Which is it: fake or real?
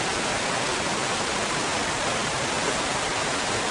real